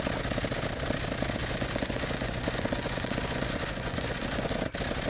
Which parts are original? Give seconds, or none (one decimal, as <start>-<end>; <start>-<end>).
0.0-1.4; 4.5-5.1